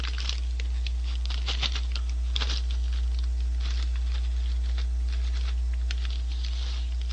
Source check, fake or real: real